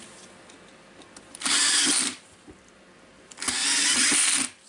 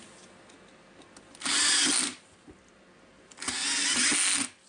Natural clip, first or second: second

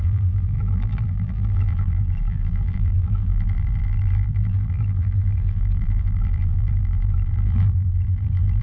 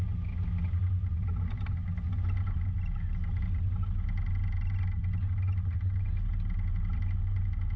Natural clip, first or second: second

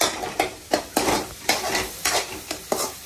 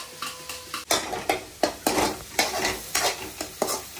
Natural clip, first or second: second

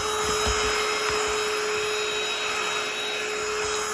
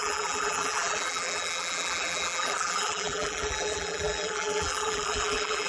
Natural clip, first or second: first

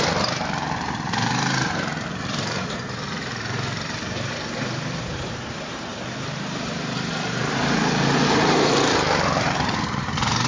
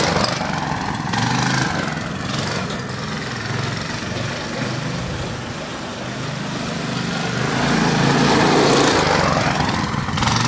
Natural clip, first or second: second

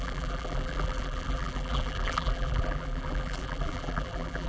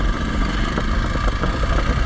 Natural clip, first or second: second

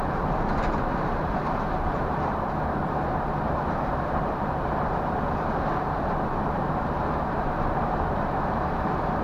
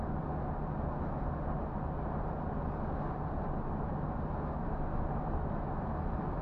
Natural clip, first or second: second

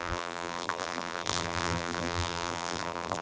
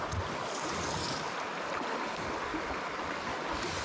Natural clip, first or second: second